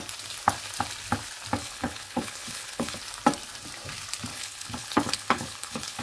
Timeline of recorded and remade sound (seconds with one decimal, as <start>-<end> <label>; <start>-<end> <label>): 0.0-1.6 recorded; 1.6-3.0 remade; 3.0-4.3 recorded; 4.3-6.0 remade